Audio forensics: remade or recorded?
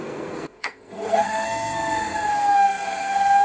remade